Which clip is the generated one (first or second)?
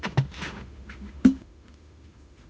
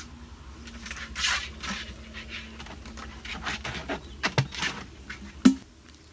first